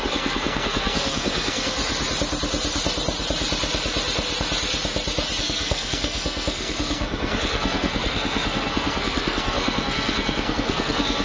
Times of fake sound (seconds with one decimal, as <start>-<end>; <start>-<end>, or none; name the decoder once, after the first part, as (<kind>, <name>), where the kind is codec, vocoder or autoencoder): 0.0-1.8 (codec, SNAC); 5.4-11.2